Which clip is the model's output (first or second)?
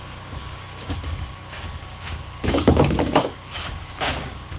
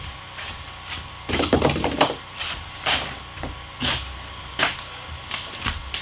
first